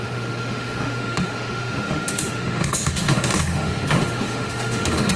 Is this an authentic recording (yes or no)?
no